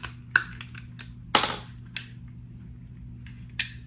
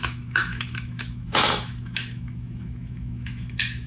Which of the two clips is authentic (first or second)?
first